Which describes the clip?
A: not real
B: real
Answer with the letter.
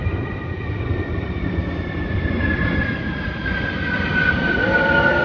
A